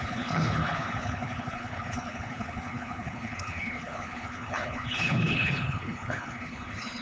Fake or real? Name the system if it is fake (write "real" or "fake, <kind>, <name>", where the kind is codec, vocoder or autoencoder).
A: fake, codec, HILCodec